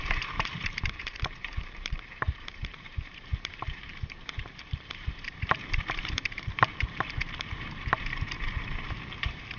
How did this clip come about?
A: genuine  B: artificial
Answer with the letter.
B